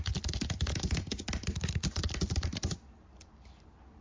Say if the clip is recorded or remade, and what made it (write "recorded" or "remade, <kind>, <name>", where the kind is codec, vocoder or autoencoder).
recorded